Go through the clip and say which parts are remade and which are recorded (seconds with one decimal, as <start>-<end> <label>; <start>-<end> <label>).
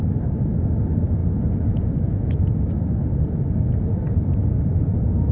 0.0-5.3 recorded